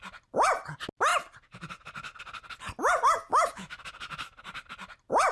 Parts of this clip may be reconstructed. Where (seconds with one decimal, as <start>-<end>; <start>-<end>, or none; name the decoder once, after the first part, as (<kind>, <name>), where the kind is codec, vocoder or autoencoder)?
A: 3.3-3.9 (autoencoder, DAC-VAE)